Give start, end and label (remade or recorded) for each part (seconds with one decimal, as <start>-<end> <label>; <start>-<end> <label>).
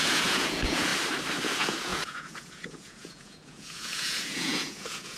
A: 0.0-0.9 remade; 0.9-1.4 recorded; 1.4-5.2 remade